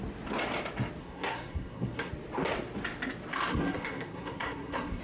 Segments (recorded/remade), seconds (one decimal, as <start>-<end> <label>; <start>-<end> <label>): 0.0-1.0 recorded; 1.0-2.1 remade; 2.1-3.5 recorded; 3.5-5.0 remade